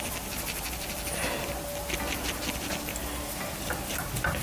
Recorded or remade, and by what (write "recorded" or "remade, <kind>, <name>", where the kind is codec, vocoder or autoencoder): recorded